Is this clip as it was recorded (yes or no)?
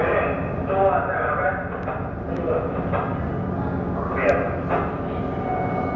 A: yes